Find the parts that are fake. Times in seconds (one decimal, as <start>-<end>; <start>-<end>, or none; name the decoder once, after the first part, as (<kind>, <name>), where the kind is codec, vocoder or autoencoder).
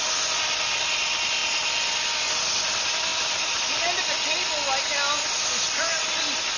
none